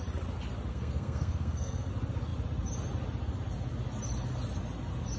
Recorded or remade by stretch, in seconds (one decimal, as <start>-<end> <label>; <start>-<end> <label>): 0.0-0.7 recorded; 0.7-1.9 remade; 1.9-5.2 recorded